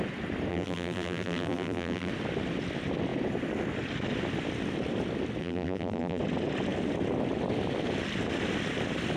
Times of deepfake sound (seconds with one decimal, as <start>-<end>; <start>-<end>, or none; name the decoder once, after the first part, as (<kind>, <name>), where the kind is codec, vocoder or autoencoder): 0.5-2.1 (vocoder, BigVGAN v2); 5.4-6.2